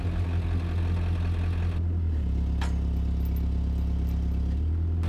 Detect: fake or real real